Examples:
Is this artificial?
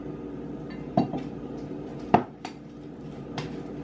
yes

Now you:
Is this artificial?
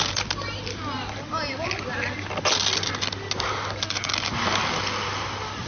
no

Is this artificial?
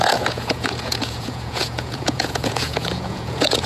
yes